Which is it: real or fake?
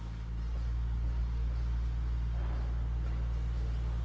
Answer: real